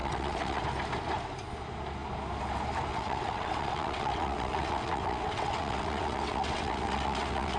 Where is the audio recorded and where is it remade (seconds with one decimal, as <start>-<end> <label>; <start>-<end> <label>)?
0.0-0.6 remade; 0.6-2.9 recorded; 2.9-7.6 remade